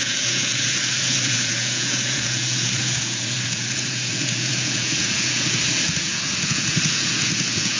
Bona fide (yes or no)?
no